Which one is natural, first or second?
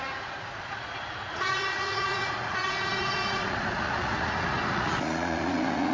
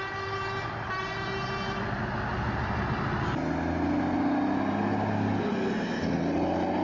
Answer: second